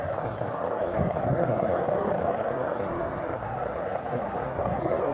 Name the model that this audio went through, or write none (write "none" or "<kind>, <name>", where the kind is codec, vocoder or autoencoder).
codec, SNAC